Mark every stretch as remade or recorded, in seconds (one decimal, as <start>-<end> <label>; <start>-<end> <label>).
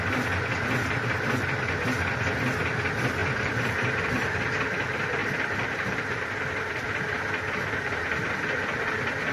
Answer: 0.0-3.2 recorded; 3.2-4.1 remade; 4.1-5.2 recorded; 5.2-8.3 remade; 8.3-9.3 recorded